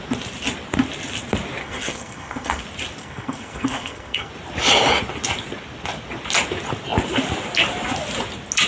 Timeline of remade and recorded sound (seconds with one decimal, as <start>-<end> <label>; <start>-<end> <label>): 0.0-1.6 recorded; 1.6-2.6 remade; 2.6-3.0 recorded; 3.0-4.3 remade; 4.3-8.7 recorded